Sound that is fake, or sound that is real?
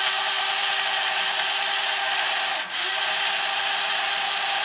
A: fake